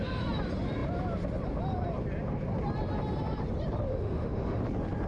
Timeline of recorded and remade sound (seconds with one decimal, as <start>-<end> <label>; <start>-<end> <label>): 0.0-3.9 recorded; 3.9-4.6 remade; 4.6-5.1 recorded